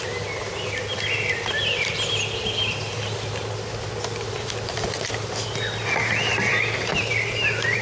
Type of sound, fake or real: real